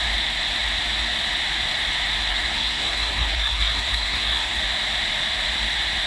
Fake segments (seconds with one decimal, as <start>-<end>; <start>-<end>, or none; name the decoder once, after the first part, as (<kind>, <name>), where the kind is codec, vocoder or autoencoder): 2.3-4.6 (codec, SNAC)